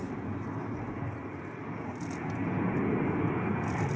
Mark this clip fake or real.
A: real